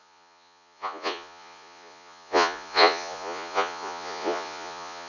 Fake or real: fake